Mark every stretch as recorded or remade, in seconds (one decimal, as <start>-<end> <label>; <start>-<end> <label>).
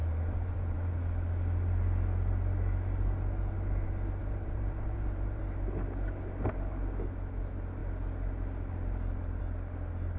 0.0-0.9 remade; 0.9-4.2 recorded; 4.2-5.4 remade; 5.4-10.2 recorded